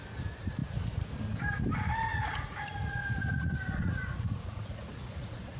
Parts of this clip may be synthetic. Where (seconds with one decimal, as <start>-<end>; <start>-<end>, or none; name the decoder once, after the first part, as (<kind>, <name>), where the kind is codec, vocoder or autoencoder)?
2.1-5.6 (vocoder, Vocos)